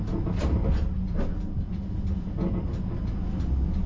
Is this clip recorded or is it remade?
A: recorded